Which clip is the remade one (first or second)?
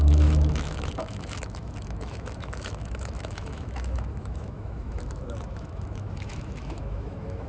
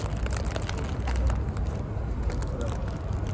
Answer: first